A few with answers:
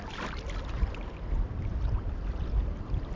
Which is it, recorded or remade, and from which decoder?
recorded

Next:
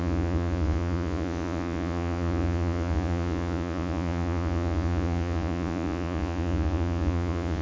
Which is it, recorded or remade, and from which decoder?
remade, vocoder, Vocos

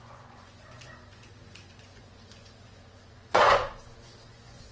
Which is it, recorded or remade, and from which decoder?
remade, vocoder, Vocos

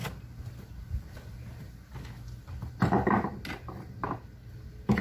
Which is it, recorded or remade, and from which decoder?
recorded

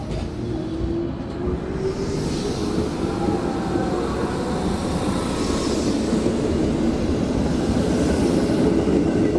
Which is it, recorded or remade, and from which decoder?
recorded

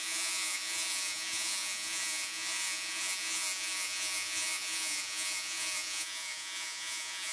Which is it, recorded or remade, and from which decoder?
remade, vocoder, Vocos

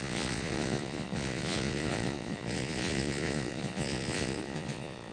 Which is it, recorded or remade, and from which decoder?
remade, vocoder, Vocos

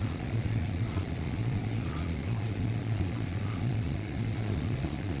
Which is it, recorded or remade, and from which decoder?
remade, vocoder, Vocos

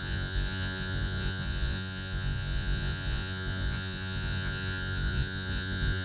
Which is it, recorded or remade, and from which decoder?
remade, vocoder, Vocos